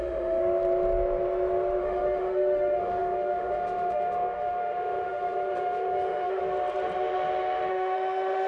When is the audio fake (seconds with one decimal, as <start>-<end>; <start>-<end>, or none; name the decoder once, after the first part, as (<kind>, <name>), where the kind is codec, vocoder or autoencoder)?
0.0-0.4 (autoencoder, DAC-VAE); 1.8-6.4; 7.7-8.5